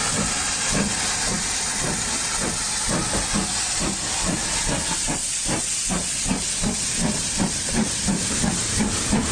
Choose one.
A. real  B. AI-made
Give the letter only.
A